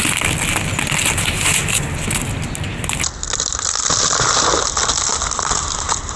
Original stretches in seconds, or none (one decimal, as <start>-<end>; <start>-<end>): 0.0-6.2